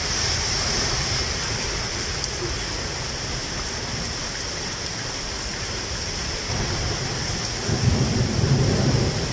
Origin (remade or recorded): recorded